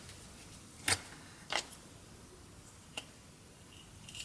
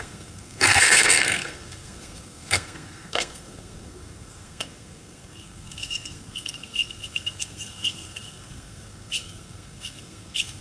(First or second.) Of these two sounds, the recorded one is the first